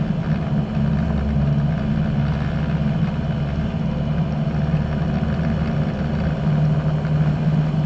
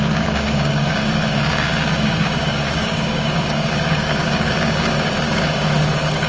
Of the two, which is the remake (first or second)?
second